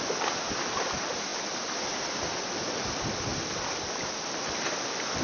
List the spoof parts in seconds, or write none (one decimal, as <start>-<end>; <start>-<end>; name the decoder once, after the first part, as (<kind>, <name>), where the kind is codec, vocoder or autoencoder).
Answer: 3.3-5.2 (vocoder, BigVGAN v2)